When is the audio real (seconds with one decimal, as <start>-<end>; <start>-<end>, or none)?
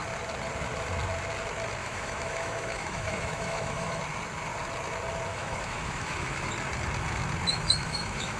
0.0-1.8; 4.0-5.3; 6.5-7.5